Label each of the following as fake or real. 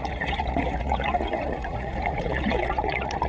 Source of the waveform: fake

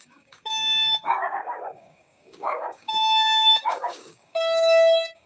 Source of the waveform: fake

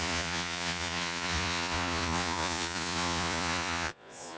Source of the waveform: fake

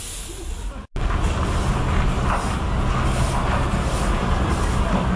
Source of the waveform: real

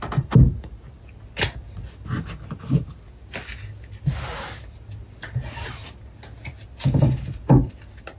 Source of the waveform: real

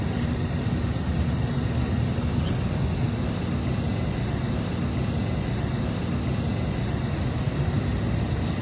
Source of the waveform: real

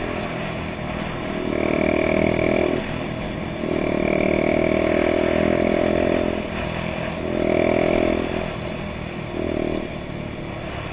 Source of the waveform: real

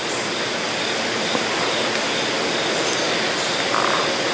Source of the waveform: real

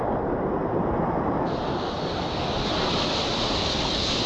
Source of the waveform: real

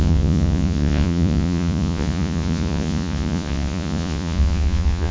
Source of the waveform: fake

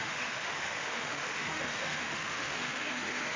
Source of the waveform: fake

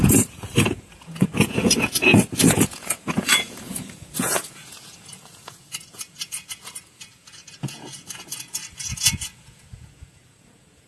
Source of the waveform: fake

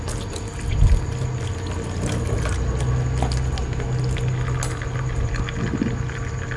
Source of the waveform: real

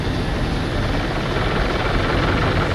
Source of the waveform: real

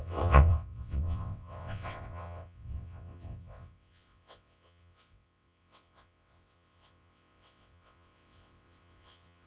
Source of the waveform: fake